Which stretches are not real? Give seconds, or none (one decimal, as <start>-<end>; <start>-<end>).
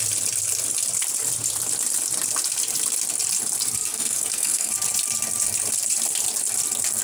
3.9-4.7